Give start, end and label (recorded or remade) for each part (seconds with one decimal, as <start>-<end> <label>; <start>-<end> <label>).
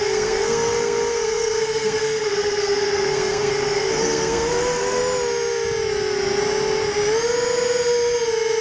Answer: 0.0-5.0 remade; 5.0-8.6 recorded